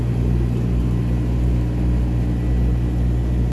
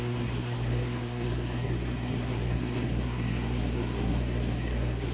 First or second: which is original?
first